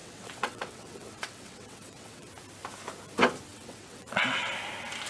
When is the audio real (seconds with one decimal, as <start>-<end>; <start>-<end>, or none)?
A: 2.3-3.5; 4.5-5.1